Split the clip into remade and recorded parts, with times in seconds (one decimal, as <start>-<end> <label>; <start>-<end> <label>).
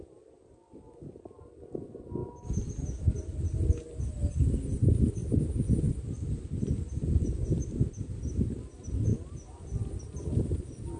0.0-2.2 remade; 2.2-4.1 recorded; 4.1-5.2 remade; 5.2-5.9 recorded; 5.9-9.1 remade; 9.1-11.0 recorded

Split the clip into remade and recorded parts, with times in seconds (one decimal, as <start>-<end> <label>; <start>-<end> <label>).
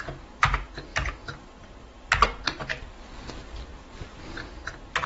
0.0-3.7 recorded; 3.7-4.6 remade; 4.6-5.1 recorded